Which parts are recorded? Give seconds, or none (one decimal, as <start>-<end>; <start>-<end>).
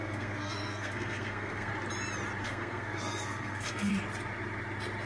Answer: 1.7-2.4; 3.9-5.1